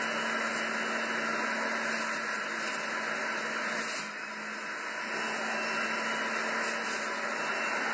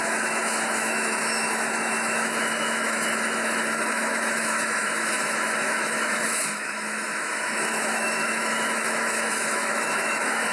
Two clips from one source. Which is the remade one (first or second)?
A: second